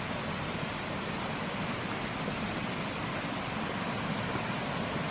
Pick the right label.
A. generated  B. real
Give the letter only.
B